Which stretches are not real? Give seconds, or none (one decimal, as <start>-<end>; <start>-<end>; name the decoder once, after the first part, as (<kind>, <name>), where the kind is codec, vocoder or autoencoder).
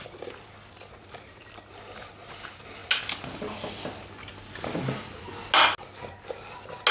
none